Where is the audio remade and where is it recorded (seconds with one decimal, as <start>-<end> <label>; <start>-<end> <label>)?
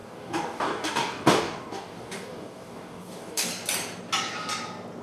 0.0-3.5 remade; 3.5-5.0 recorded